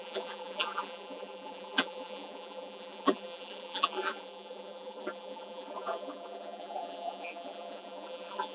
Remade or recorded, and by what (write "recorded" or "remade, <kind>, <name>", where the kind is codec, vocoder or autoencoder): remade, vocoder, BigVGAN v2